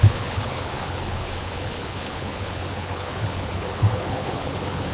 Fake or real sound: fake